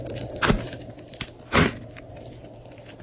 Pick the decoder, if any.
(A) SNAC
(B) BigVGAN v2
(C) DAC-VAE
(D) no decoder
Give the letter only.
D